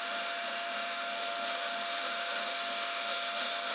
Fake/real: fake